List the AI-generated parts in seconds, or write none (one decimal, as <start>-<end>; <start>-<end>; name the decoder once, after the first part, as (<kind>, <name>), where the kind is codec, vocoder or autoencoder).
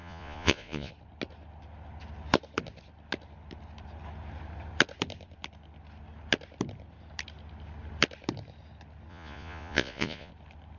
0.0-0.9 (vocoder, Vocos); 9.1-10.3